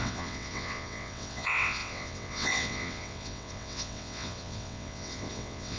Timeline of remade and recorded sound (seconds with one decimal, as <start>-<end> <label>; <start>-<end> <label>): 0.0-5.8 remade